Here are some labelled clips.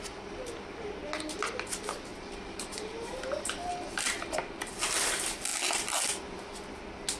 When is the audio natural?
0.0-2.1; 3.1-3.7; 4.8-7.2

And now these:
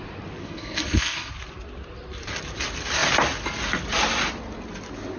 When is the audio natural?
0.0-0.4; 1.3-5.2

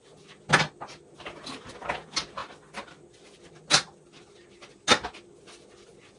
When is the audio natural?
0.0-2.4; 3.0-6.2

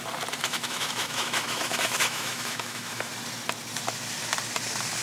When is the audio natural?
0.0-0.4; 3.1-5.0

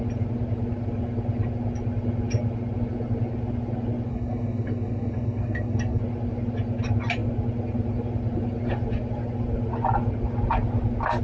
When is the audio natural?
0.0-4.1; 6.0-11.2

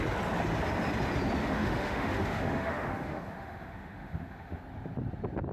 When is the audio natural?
0.0-1.4; 4.6-5.5